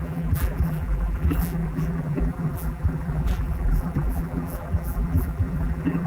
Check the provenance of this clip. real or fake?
fake